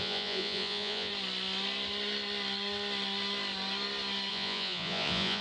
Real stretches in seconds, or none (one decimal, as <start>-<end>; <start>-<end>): 1.1-4.3